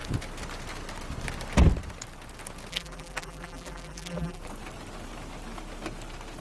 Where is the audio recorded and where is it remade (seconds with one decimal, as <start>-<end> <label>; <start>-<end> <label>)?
0.0-2.7 recorded; 2.7-4.4 remade; 4.4-6.4 recorded